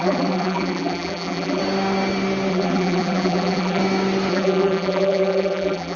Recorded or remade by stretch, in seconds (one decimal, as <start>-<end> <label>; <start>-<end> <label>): 0.0-1.6 remade; 1.6-2.5 recorded; 2.5-3.8 remade; 3.8-4.3 recorded; 4.3-6.0 remade